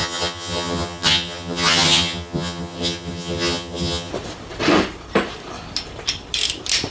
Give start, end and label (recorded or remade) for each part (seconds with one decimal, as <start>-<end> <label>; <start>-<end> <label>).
0.0-4.1 remade; 4.1-6.9 recorded